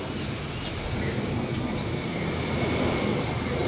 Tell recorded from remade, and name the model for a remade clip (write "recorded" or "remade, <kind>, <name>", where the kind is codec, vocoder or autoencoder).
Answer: recorded